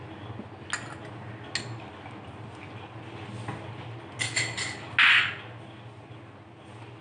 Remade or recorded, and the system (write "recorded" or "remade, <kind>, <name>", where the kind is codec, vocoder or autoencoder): recorded